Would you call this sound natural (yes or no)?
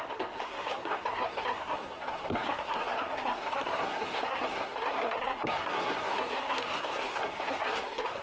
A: no